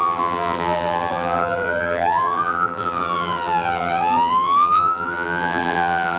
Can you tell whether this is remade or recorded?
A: remade